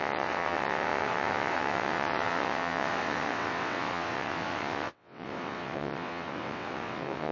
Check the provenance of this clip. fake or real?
fake